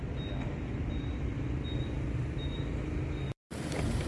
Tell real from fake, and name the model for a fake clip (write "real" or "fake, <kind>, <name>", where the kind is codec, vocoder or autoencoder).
real